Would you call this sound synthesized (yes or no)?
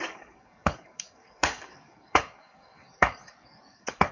yes